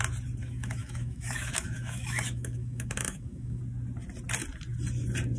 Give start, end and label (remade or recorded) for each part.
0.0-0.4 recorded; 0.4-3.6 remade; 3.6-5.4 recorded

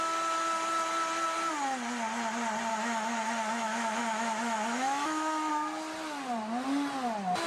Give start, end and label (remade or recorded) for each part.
0.0-2.7 recorded; 2.7-5.5 remade; 5.5-7.5 recorded